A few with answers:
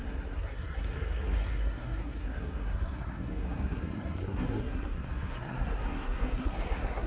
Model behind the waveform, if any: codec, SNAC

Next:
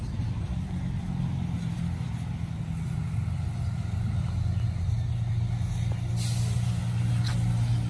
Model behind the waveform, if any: none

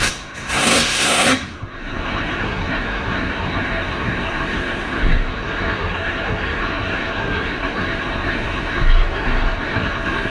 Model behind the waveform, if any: codec, SNAC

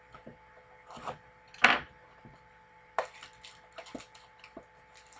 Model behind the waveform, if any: none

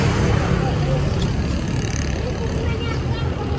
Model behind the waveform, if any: none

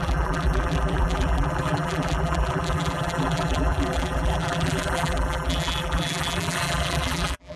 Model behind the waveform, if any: vocoder, BigVGAN v2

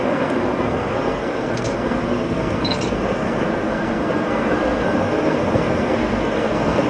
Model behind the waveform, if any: codec, SNAC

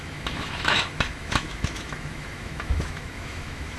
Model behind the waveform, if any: autoencoder, DAC-VAE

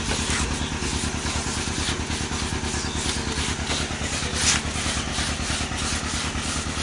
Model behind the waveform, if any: none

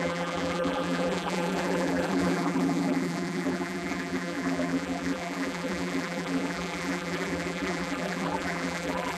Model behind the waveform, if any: vocoder, BigVGAN v2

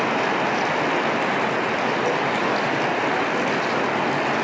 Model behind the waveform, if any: none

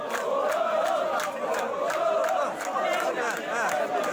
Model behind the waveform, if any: none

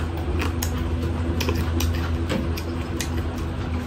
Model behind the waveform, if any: none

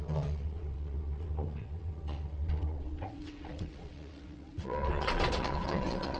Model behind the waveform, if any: vocoder, WaveNeXt